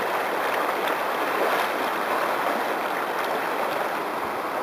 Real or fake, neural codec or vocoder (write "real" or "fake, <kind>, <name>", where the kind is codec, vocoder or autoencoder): real